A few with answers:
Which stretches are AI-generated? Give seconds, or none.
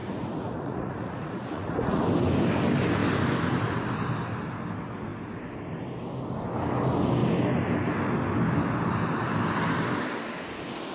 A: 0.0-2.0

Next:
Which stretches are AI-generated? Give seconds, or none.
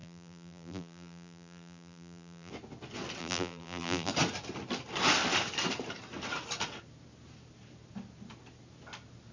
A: 0.0-2.5; 3.2-4.1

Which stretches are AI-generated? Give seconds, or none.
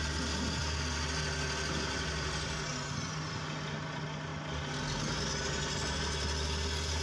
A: none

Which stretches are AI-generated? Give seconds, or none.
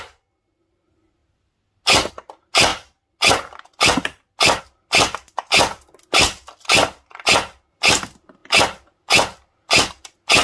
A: none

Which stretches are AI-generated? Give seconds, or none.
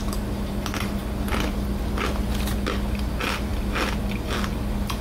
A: none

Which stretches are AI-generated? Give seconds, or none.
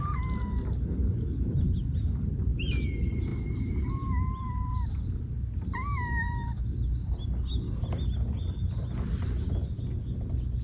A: none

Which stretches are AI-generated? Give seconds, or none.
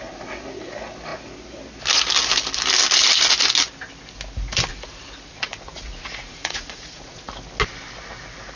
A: 4.7-7.3